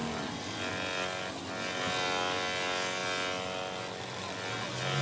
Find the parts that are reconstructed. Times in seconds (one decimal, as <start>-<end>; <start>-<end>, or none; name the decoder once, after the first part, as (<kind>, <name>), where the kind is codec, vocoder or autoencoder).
none